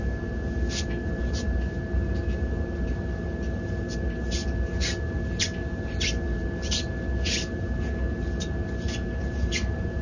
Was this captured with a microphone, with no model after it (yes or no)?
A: yes